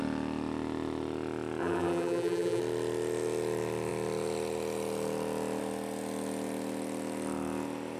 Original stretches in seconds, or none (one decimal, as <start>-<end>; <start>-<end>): 0.0-1.6; 2.6-8.0